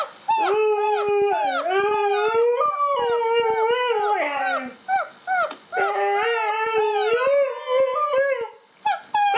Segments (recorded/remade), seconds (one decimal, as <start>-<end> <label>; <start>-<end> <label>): 0.0-9.4 recorded